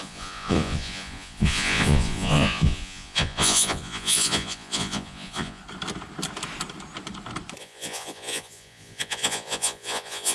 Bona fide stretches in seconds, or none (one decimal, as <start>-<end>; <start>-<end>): 5.6-7.6